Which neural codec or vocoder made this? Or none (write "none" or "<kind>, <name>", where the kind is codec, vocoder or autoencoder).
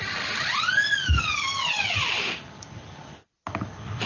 none